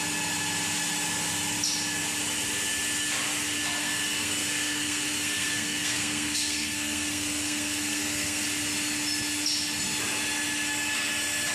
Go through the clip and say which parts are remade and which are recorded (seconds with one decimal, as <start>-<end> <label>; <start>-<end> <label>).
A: 0.0-3.8 recorded; 3.8-8.4 remade; 8.4-11.5 recorded